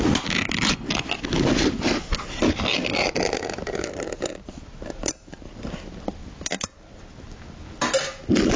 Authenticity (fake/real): real